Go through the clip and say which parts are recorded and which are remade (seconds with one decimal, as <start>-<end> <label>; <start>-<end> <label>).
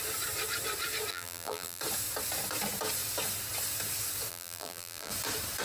0.0-1.1 recorded; 1.1-1.8 remade; 1.8-4.3 recorded; 4.3-5.1 remade; 5.1-5.6 recorded